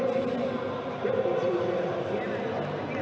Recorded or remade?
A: recorded